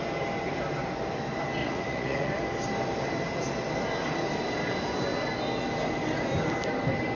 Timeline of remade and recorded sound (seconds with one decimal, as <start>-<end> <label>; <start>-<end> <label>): 0.0-1.6 recorded; 1.6-2.3 remade; 2.3-7.1 recorded